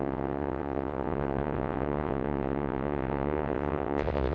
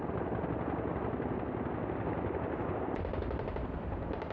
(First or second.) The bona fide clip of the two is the second